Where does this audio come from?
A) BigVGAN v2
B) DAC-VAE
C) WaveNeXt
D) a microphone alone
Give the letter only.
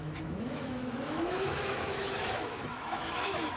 B